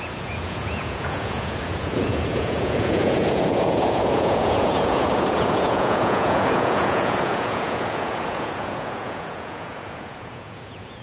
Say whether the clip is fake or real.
fake